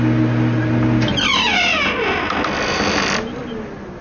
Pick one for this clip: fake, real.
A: real